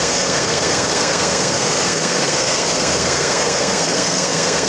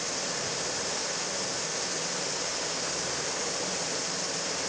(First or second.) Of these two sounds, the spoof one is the first